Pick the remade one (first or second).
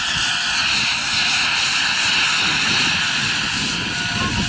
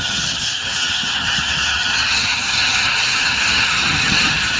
second